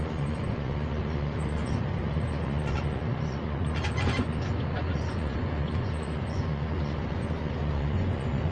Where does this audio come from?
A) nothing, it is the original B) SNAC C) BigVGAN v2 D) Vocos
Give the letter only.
D